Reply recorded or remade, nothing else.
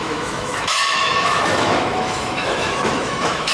remade